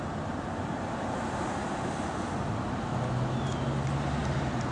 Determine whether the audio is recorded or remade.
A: recorded